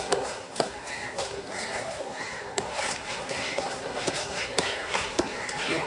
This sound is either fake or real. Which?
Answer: fake